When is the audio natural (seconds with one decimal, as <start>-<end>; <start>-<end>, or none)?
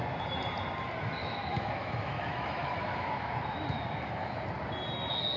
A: 0.0-1.2; 4.4-5.4